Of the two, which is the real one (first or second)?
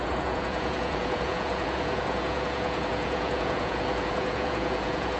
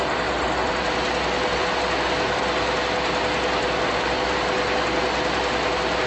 second